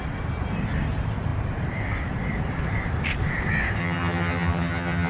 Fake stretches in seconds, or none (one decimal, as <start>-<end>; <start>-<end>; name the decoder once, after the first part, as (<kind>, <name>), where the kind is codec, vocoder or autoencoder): 3.8-5.1 (vocoder, HiFi-GAN)